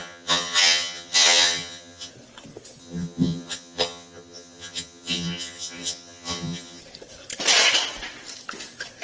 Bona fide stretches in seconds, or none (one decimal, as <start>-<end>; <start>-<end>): 2.1-2.8; 6.8-9.0